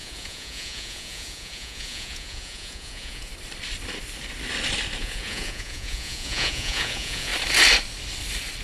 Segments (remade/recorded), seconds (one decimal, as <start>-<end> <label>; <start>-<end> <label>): 0.0-3.3 remade; 3.3-5.0 recorded; 5.0-7.3 remade; 7.3-8.6 recorded